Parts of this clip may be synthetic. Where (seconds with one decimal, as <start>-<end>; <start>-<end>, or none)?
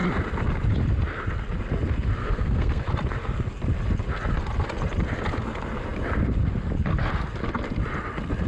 2.2-2.8